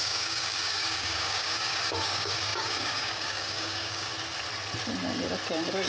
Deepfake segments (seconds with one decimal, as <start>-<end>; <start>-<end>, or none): 0.0-4.1

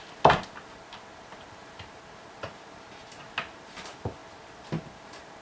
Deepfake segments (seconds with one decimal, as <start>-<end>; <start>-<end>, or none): none

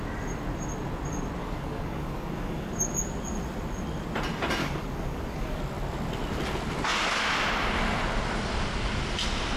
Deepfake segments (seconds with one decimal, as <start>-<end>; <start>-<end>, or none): 1.4-2.7; 4.6-5.6

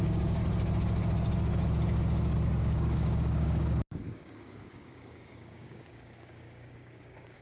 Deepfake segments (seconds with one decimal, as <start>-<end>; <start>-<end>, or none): 0.0-0.4; 2.6-7.4

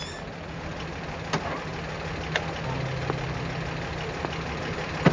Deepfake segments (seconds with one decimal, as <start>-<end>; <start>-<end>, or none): none

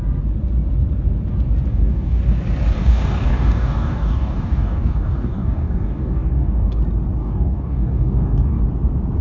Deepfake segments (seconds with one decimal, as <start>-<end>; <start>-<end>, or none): 1.7-2.2; 2.8-6.8; 7.2-8.6

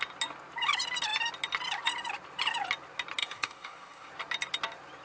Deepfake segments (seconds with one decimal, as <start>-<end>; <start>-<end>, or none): 3.2-4.1